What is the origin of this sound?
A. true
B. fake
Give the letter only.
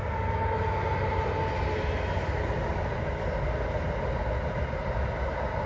A